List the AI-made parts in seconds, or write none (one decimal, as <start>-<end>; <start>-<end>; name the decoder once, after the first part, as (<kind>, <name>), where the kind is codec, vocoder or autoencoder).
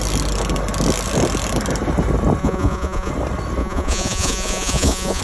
2.4-3.1 (vocoder, Vocos); 3.6-5.2